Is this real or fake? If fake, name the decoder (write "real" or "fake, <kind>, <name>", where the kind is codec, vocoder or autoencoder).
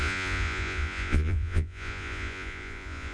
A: fake, vocoder, Vocos